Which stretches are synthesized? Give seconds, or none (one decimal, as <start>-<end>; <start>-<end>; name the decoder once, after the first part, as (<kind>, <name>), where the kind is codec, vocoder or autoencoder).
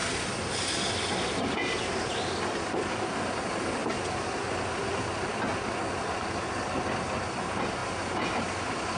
none